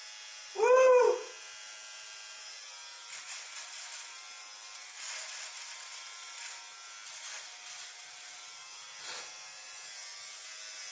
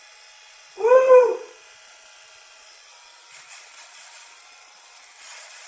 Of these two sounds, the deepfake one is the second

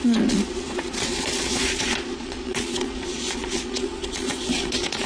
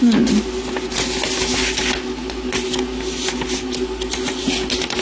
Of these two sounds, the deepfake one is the first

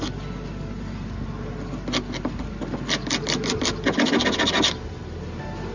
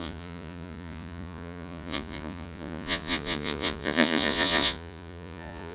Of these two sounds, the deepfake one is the second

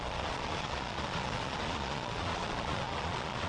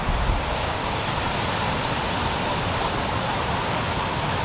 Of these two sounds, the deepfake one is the first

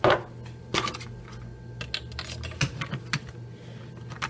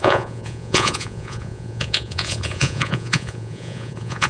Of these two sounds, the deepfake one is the second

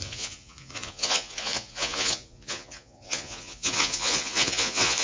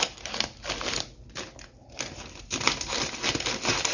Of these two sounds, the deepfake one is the first